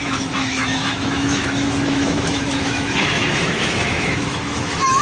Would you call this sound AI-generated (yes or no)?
yes